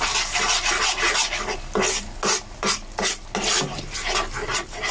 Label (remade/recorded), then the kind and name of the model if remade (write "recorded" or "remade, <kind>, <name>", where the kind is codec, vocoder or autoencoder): recorded